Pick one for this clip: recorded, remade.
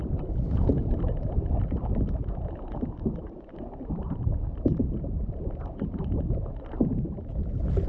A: recorded